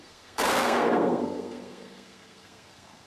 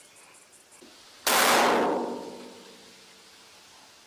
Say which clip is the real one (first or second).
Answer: second